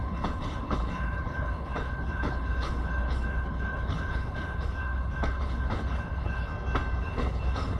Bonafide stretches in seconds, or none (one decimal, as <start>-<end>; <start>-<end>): 6.5-7.0